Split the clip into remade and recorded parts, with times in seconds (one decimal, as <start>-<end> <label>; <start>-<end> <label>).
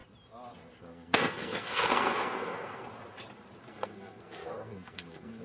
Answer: 0.0-0.8 recorded; 0.8-2.9 remade; 2.9-3.7 recorded; 3.7-5.4 remade